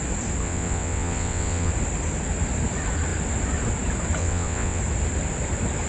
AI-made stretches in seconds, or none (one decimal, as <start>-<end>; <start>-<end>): 0.4-1.7; 4.2-4.8